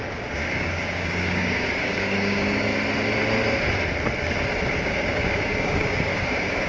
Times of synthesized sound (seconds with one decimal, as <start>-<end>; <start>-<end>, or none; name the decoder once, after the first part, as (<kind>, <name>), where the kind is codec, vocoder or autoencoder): 0.0-2.7 (codec, DAC); 4.9-6.7